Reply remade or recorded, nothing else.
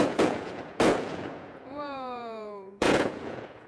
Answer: remade